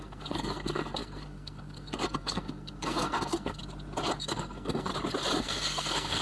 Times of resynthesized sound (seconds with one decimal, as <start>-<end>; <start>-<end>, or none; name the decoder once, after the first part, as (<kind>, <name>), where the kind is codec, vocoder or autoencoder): 0.0-3.6 (codec, SNAC); 4.2-4.9; 5.4-6.2